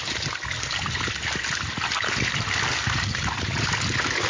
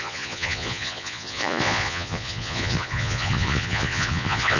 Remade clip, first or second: second